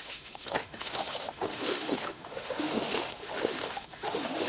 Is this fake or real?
fake